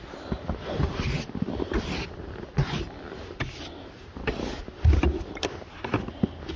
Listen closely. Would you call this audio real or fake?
real